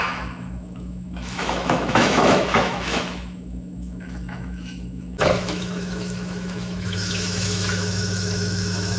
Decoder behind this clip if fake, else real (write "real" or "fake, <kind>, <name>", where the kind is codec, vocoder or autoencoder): fake, autoencoder, DAC-VAE